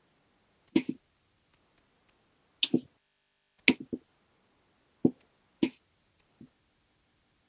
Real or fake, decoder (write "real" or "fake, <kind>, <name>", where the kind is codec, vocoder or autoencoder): real